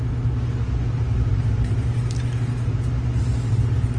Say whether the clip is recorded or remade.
recorded